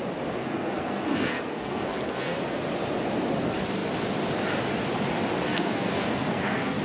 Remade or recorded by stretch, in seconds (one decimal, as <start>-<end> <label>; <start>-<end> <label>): 0.0-0.4 recorded; 0.4-2.6 remade; 2.6-5.4 recorded; 5.4-6.8 remade